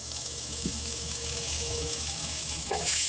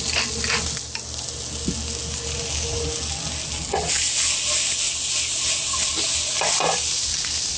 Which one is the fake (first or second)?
first